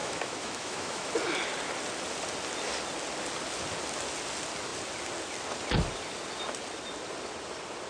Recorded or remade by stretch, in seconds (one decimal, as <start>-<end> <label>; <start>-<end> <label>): 0.0-1.1 remade; 1.1-7.9 recorded